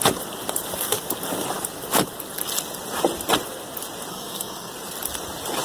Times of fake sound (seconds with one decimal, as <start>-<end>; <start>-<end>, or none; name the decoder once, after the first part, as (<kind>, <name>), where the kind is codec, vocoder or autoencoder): 4.1-4.7 (codec, SNAC)